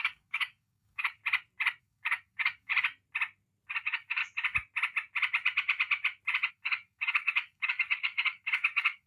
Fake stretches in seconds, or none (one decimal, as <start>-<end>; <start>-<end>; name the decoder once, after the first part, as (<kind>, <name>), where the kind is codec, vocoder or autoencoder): 0.0-1.2 (codec, DAC); 1.8-2.7; 3.8-4.2; 6.5-9.1